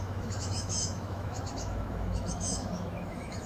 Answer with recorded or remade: remade